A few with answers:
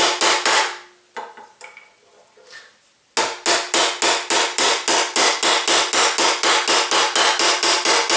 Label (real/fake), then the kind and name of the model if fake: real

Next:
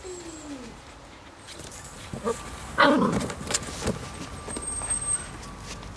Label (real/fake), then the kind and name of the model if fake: real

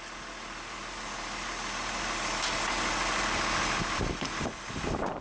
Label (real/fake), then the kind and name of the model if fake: real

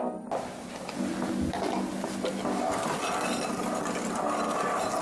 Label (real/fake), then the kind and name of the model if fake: real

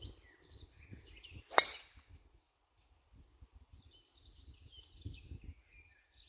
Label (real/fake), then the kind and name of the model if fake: real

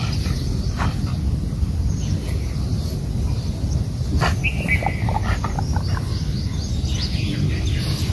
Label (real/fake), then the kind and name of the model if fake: real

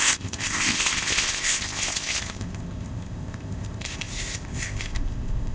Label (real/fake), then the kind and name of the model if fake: fake, codec, ZipCodec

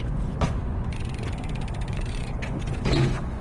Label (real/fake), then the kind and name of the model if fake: fake, vocoder, Vocos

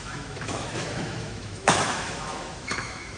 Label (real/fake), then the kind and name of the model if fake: fake, autoencoder, DAC-VAE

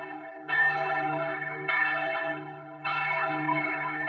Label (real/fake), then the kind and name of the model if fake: fake, codec, HILCodec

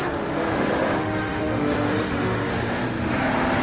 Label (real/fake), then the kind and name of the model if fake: fake, autoencoder, DAC-VAE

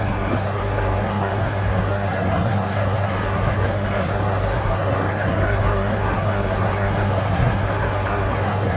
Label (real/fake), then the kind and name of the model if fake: fake, codec, SNAC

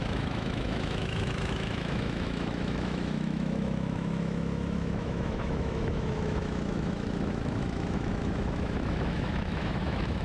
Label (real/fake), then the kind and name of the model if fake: fake, autoencoder, DAC-VAE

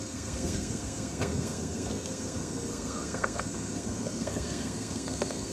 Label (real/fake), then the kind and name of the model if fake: fake, codec, SNAC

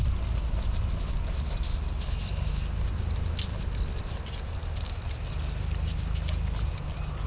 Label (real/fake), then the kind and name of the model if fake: real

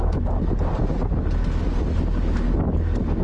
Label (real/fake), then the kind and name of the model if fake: real